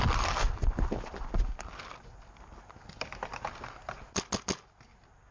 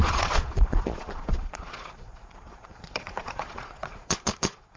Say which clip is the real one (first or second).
first